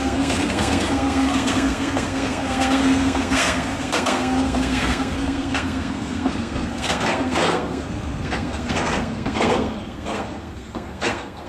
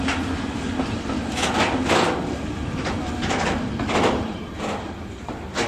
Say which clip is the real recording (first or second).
second